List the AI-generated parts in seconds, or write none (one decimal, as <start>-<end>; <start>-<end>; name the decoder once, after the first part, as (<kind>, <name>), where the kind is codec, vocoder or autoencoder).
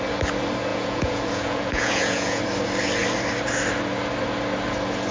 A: 0.7-2.4 (vocoder, Vocos)